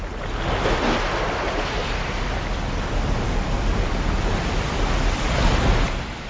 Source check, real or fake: real